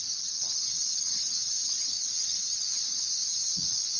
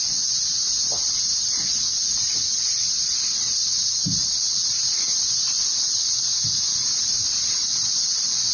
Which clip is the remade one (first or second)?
first